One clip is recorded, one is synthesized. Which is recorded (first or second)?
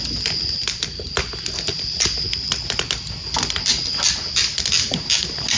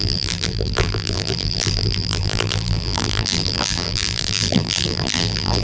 first